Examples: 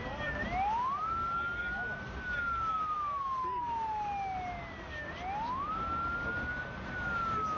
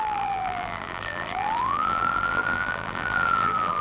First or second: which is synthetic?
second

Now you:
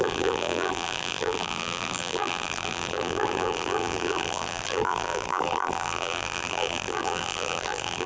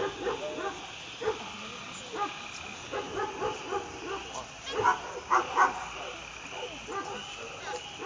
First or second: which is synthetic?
first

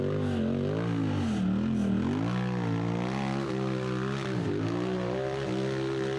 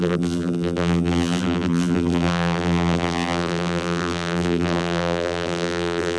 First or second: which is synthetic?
second